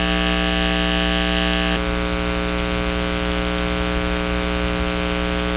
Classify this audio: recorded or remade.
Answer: recorded